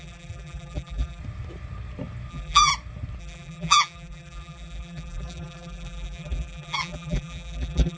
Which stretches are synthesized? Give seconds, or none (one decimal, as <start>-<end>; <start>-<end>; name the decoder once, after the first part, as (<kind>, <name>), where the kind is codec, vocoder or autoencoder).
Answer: 0.0-1.2 (vocoder, BigVGAN v2); 2.3-2.7; 3.2-8.0